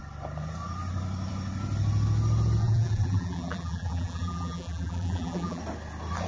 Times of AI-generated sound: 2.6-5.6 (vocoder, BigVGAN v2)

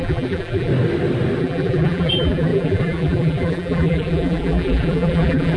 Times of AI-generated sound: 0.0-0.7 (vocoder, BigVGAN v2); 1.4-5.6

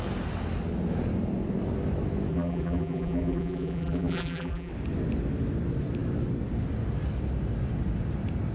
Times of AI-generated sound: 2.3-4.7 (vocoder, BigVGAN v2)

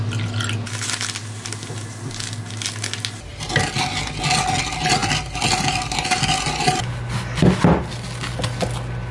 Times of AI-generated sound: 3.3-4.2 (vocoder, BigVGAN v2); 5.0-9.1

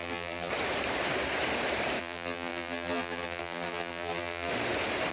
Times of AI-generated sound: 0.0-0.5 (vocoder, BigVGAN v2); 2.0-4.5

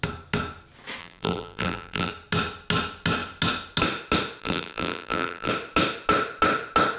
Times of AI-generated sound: 1.0-2.1 (vocoder, BigVGAN v2); 4.4-5.5

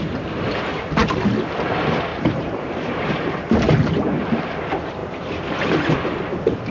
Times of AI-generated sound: 2.1-3.3 (vocoder, BigVGAN v2); 5.0-5.6

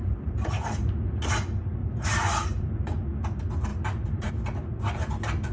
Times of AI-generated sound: 0.0-1.3 (vocoder, BigVGAN v2); 1.8-3.0; 3.7-4.3